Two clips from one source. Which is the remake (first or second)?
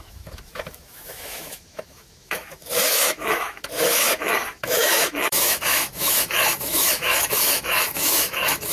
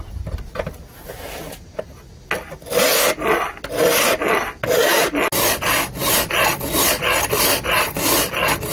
first